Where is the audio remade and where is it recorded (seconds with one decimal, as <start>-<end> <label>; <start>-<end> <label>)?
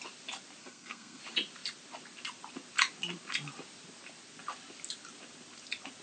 0.0-0.6 recorded; 0.6-1.2 remade; 1.2-6.0 recorded